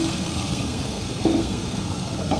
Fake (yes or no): yes